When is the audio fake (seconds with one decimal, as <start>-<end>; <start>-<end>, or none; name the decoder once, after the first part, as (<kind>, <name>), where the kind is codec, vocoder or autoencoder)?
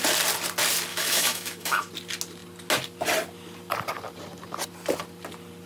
0.9-1.9 (autoencoder, DAC-VAE)